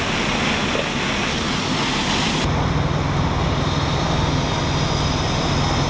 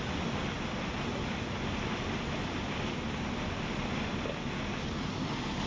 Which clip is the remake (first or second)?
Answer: second